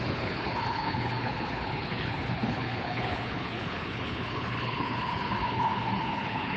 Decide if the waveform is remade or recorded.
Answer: remade